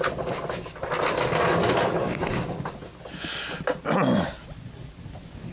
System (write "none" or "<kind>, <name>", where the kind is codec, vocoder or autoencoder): none